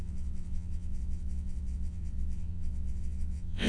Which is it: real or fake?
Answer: fake